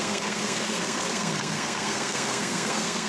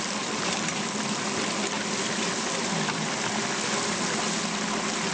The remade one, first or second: first